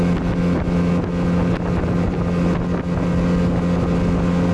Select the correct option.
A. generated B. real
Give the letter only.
B